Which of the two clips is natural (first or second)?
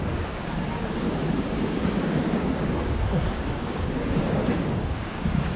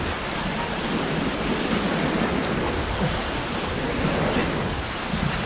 second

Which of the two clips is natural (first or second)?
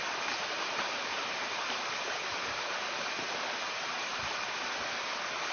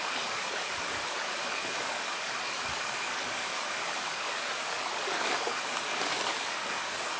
first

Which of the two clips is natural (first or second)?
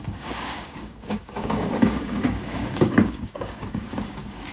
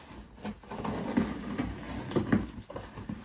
second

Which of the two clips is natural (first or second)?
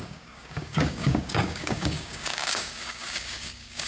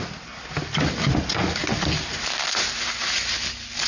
second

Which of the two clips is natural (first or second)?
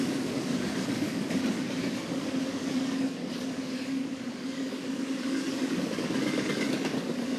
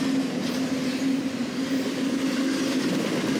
second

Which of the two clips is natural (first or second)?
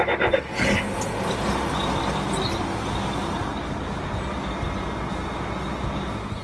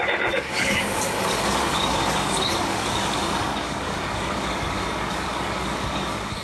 first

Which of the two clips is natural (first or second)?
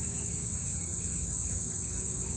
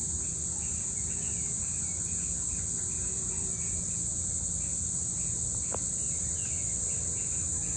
second